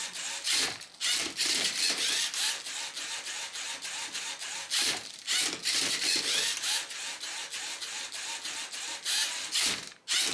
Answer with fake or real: real